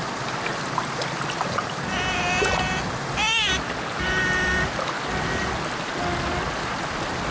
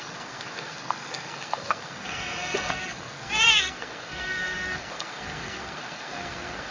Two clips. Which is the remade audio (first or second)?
second